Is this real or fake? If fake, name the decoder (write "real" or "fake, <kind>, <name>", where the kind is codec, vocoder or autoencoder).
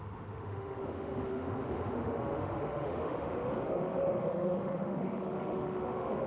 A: fake, autoencoder, DAC-VAE